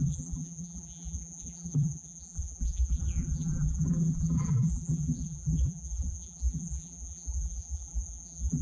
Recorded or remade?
remade